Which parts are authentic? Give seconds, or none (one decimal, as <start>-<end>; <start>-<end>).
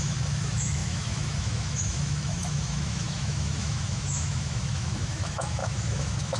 none